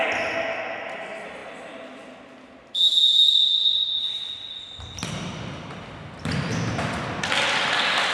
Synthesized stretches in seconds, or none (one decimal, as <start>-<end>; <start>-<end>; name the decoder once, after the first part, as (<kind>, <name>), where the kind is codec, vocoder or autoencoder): none